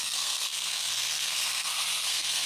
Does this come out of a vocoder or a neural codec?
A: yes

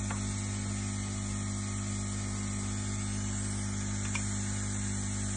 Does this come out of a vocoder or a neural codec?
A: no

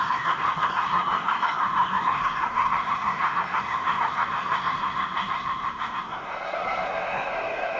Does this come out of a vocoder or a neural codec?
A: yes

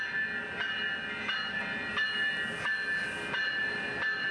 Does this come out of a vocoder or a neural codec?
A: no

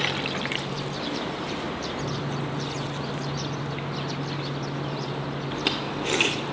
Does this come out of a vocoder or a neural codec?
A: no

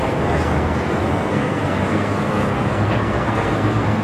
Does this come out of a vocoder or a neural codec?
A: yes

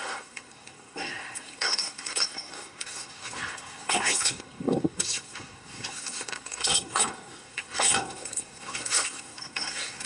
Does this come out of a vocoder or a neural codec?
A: yes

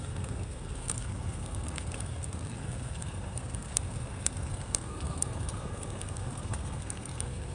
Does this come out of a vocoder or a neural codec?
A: yes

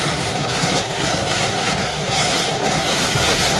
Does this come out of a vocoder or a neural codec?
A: yes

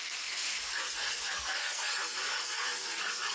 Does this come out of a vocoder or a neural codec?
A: yes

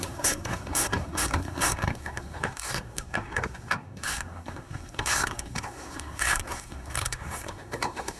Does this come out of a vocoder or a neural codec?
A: yes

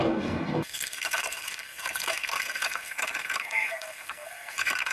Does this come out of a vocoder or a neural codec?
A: yes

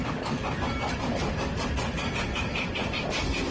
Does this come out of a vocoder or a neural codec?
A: no